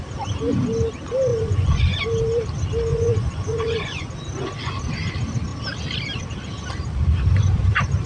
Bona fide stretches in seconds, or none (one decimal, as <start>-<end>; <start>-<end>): 0.0-1.3; 2.0-2.9; 4.1-8.1